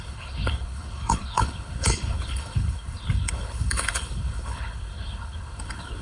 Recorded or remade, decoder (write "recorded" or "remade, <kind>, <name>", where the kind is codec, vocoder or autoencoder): remade, codec, HILCodec